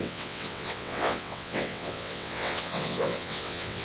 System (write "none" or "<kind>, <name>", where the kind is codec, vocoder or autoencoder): vocoder, WaveNeXt